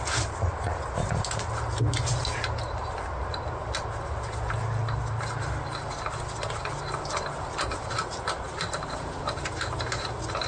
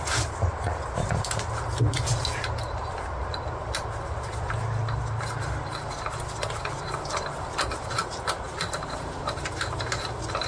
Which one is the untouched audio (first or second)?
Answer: first